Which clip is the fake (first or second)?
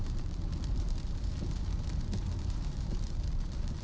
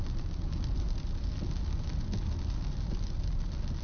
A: first